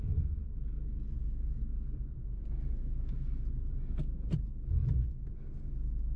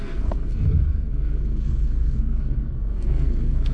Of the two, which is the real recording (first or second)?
first